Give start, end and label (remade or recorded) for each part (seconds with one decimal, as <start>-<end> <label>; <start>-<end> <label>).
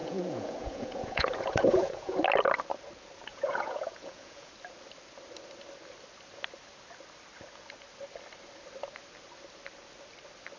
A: 0.0-2.2 remade; 2.2-3.3 recorded; 3.3-4.5 remade; 4.5-10.6 recorded